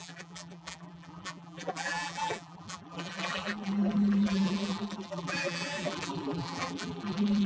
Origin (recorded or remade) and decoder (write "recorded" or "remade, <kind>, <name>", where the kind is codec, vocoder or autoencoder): remade, vocoder, BigVGAN v2